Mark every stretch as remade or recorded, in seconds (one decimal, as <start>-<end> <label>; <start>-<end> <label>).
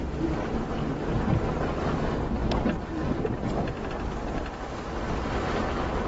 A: 0.0-6.1 recorded